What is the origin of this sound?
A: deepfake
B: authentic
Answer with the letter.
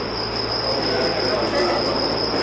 A